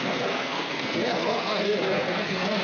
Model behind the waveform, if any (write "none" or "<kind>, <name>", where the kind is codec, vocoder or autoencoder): codec, SNAC